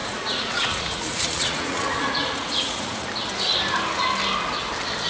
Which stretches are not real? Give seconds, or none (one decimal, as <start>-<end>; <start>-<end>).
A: 0.0-3.1